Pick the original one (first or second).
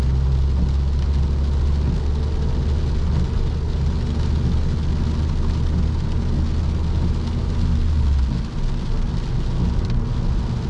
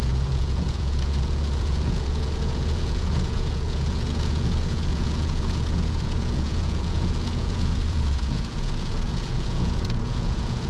first